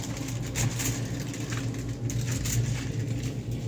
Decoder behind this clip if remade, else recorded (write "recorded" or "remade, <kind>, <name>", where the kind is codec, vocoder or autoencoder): recorded